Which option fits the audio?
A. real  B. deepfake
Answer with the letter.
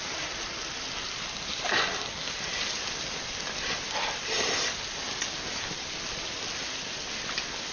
A